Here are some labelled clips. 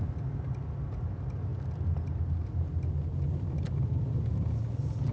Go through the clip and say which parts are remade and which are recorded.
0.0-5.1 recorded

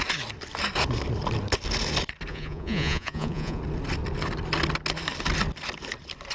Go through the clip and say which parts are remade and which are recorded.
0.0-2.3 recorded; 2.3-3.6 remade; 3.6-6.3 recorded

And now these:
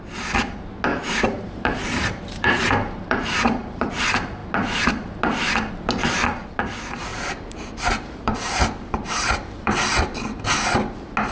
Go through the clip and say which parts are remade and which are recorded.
0.0-0.9 recorded; 0.9-3.9 remade; 3.9-7.1 recorded; 7.1-9.7 remade; 9.7-11.3 recorded

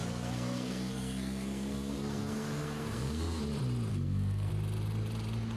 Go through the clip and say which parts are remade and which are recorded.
0.0-3.4 remade; 3.4-3.9 recorded; 3.9-4.5 remade; 4.5-5.6 recorded

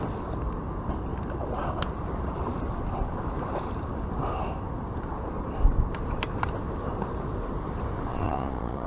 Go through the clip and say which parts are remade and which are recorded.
0.0-8.1 recorded; 8.1-8.9 remade

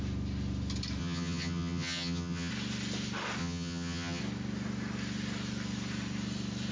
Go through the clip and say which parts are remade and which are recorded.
0.0-1.0 recorded; 1.0-2.5 remade; 2.5-3.4 recorded; 3.4-4.2 remade; 4.2-6.7 recorded